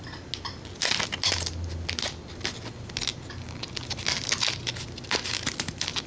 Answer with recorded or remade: recorded